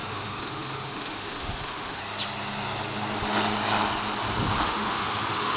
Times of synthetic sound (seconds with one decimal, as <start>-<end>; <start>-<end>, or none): 0.0-2.0; 4.6-5.6